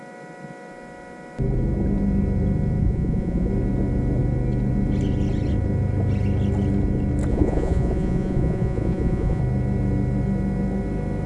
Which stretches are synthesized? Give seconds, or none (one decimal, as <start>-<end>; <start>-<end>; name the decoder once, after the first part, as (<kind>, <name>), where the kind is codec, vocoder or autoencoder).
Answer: 2.8-3.5 (vocoder, Vocos); 7.3-9.4